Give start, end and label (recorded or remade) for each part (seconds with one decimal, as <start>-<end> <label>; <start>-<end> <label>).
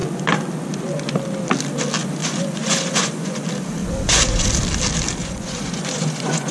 0.0-2.2 recorded; 2.2-3.4 remade; 3.4-3.8 recorded; 3.8-4.5 remade; 4.5-5.2 recorded; 5.2-6.5 remade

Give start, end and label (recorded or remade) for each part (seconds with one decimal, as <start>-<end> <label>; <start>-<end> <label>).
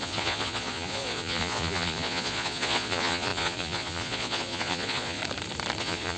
0.0-5.2 remade; 5.2-5.8 recorded; 5.8-6.2 remade